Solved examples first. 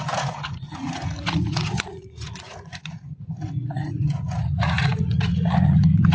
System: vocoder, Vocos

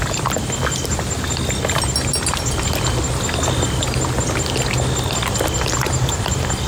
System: none